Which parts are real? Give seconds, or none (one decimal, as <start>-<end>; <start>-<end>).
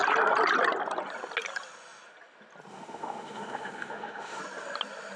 0.0-2.7; 4.4-5.2